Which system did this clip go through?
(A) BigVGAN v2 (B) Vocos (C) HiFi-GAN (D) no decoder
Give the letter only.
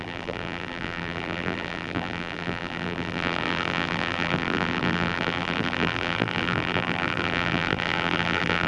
A